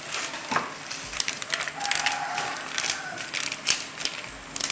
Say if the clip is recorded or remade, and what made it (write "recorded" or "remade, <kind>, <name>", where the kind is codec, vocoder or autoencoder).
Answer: recorded